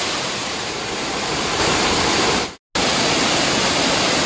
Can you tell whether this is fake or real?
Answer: real